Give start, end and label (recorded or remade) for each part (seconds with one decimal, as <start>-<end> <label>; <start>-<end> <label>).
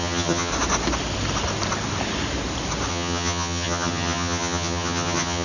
0.0-0.5 remade; 0.5-2.9 recorded; 2.9-5.4 remade